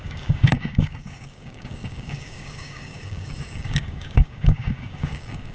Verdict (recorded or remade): remade